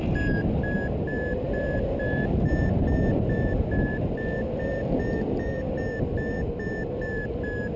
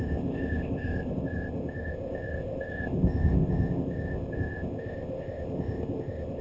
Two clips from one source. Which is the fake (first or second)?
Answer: second